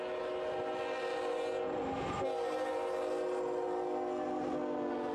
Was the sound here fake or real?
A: real